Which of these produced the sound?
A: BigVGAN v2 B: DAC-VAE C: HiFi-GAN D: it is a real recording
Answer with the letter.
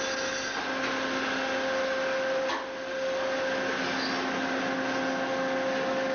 D